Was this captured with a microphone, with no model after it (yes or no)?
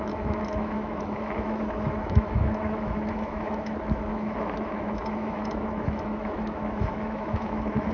no